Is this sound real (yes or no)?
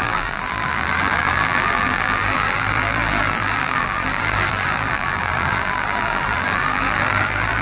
no